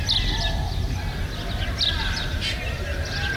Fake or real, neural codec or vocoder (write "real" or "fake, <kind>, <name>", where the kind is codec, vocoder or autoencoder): real